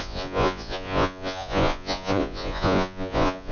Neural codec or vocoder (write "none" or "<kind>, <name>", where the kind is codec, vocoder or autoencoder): vocoder, Vocos